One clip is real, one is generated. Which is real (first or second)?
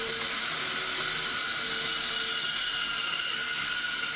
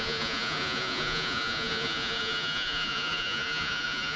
first